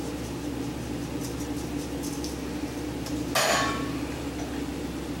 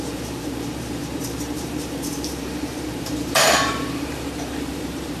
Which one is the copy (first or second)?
second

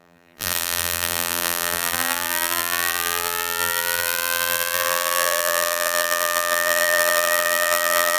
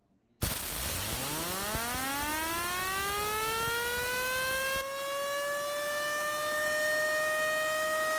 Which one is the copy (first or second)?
first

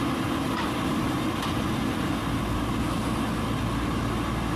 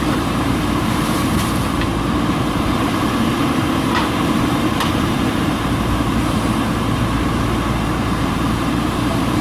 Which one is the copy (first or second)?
second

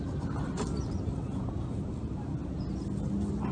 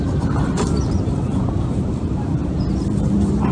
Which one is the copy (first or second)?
second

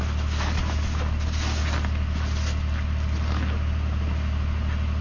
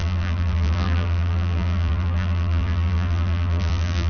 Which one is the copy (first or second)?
second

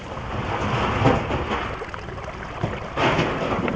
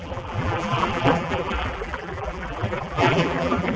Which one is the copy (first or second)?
second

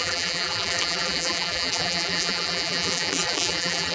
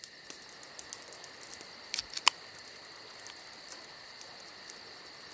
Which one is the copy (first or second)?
first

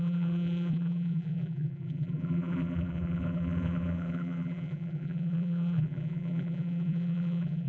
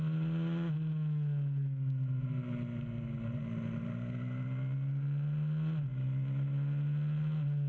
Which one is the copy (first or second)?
first